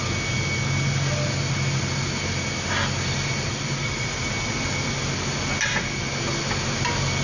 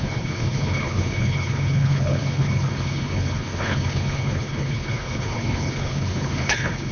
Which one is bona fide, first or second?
first